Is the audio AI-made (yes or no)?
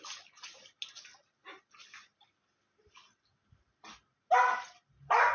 no